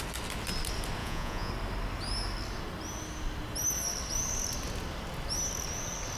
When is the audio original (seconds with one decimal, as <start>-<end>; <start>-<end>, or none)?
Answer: 0.0-1.0; 1.5-6.2